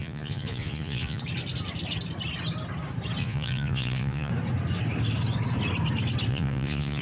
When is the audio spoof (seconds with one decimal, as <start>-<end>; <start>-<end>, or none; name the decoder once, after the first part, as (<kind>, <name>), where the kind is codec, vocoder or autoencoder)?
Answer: 0.0-1.2 (vocoder, Vocos); 3.2-4.3; 6.3-7.0